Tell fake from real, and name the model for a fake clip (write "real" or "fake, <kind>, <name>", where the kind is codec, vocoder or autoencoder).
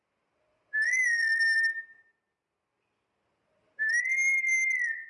real